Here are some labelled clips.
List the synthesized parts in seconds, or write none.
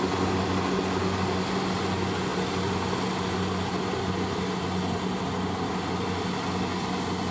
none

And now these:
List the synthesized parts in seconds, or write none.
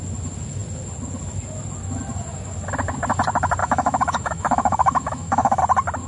3.6-5.6